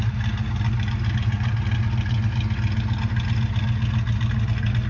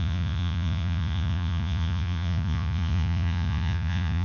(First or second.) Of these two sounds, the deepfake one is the second